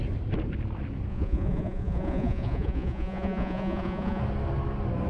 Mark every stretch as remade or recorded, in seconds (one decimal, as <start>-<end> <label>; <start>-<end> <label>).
0.0-1.1 recorded; 1.1-4.2 remade; 4.2-5.1 recorded